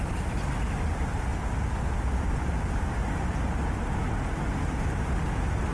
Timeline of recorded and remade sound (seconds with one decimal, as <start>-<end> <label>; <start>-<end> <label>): 0.0-5.7 recorded